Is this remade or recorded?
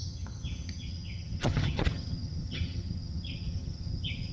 remade